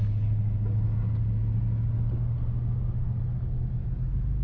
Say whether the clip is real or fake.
real